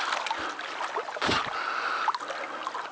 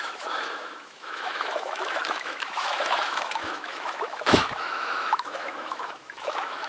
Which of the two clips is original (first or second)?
first